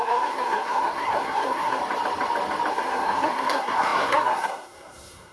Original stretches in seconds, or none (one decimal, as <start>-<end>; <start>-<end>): 1.8-2.7